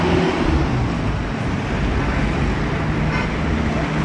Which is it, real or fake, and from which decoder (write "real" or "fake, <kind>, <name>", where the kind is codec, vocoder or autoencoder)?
real